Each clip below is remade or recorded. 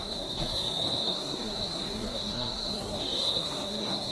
remade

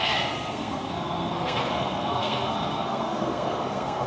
remade